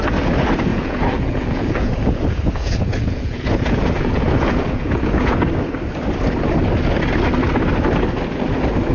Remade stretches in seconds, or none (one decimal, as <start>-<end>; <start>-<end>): 0.7-5.4